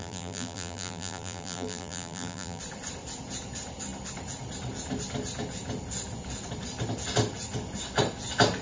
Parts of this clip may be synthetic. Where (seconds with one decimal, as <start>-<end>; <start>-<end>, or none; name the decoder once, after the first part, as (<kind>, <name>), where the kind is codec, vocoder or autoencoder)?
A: 0.0-2.6 (vocoder, BigVGAN v2)